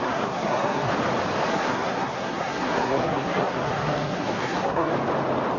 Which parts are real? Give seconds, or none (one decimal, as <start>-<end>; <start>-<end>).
0.9-1.5; 4.9-5.6